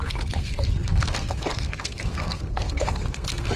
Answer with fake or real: fake